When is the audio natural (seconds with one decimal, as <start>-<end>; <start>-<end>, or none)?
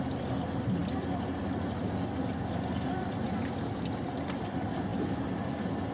0.0-5.9